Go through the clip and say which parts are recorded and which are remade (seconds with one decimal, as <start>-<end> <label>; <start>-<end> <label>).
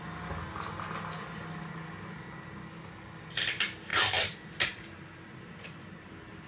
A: 0.0-3.9 recorded; 3.9-6.5 remade